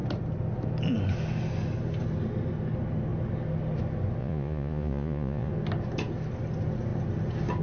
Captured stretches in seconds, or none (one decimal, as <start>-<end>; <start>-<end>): 0.0-4.2; 5.5-7.6